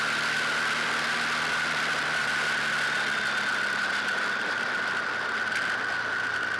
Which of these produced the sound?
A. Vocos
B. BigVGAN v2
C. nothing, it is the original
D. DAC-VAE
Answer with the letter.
C